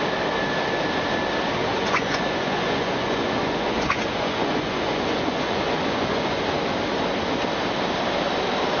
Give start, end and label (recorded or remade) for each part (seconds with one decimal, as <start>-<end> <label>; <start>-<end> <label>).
0.0-1.7 recorded; 1.7-6.4 remade; 6.4-8.8 recorded